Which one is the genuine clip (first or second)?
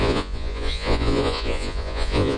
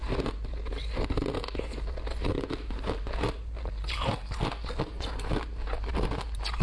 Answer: second